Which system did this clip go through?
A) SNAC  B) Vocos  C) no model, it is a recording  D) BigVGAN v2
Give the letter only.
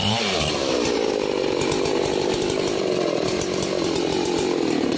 D